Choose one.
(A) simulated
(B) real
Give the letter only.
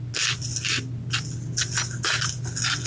B